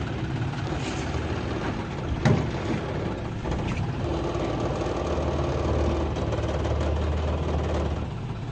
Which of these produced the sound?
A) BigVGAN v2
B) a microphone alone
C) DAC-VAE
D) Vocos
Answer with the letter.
B